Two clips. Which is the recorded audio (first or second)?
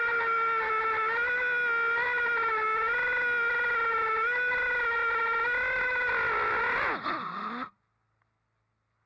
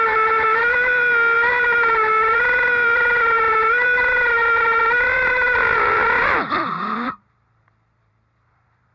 first